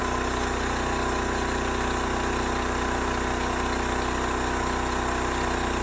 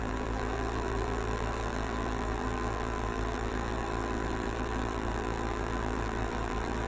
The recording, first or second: first